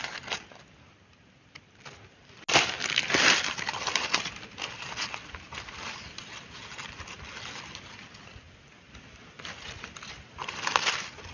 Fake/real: real